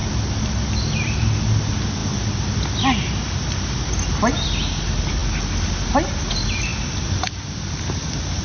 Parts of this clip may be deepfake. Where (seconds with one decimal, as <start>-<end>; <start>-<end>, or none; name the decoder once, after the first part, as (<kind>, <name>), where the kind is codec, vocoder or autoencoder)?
6.7-7.3 (vocoder, BigVGAN v2)